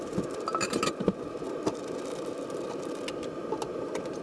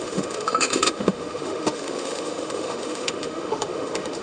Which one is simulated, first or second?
second